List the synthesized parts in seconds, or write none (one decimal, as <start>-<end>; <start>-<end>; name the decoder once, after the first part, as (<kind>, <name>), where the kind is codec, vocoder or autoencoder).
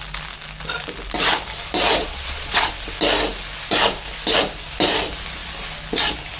2.0-2.7 (vocoder, Vocos)